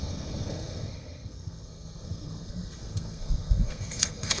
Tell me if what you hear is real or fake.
fake